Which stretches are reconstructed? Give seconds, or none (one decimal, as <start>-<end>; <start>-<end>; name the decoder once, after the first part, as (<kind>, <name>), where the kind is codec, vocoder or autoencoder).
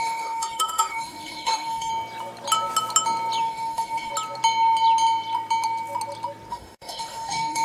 0.0-1.9 (autoencoder, DAC-VAE); 3.4-4.1; 6.5-7.6